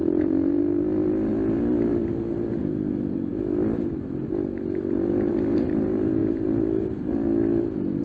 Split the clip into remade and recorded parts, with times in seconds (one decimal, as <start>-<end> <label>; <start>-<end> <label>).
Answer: 0.0-8.0 recorded